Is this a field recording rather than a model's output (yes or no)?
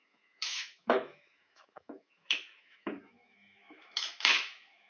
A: no